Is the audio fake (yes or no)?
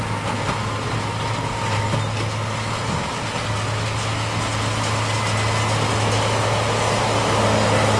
no